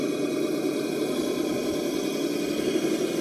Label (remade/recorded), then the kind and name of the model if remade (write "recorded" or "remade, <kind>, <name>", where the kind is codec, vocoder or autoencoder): recorded